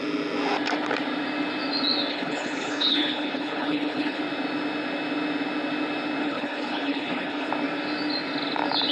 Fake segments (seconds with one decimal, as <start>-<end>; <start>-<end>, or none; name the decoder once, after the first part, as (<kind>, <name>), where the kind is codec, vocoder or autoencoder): 2.1-4.2 (codec, HILCodec); 6.2-7.5